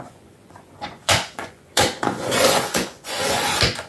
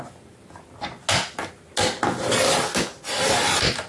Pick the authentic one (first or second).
second